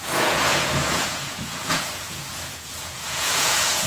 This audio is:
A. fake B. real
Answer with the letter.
A